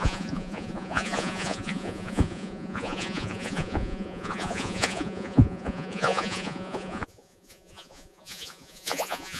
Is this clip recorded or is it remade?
remade